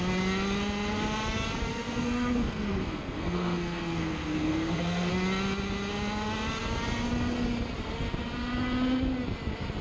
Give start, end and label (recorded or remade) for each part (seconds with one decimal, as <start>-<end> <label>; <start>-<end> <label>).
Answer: 0.0-1.7 recorded; 1.7-5.1 remade; 5.1-9.8 recorded